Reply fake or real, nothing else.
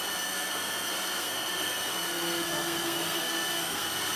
fake